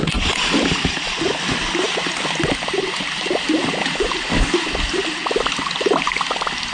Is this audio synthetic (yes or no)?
no